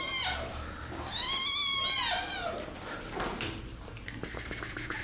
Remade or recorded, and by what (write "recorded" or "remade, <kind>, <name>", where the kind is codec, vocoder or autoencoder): recorded